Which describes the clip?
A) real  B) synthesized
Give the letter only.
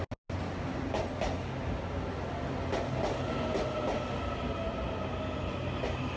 A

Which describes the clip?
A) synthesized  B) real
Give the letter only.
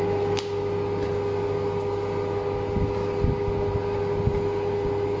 B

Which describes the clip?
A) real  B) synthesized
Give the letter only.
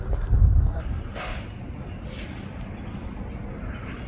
A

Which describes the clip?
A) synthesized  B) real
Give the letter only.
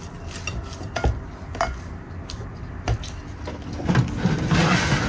B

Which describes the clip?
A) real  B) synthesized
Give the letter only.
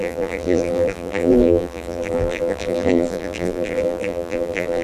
B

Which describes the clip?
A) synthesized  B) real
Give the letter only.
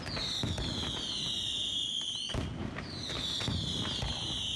B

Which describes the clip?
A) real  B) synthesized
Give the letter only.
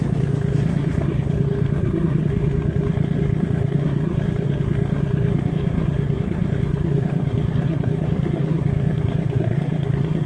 B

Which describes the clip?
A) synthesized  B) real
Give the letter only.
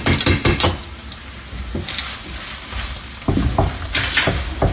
B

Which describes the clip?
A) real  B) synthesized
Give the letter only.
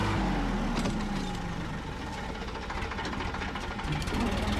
A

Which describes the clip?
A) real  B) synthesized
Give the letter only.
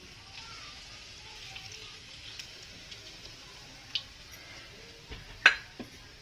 A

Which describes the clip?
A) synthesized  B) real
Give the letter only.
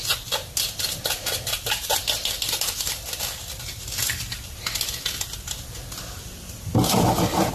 B